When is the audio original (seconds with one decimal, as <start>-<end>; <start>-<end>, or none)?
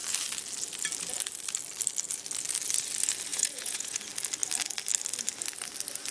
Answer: 0.0-3.3; 4.0-6.1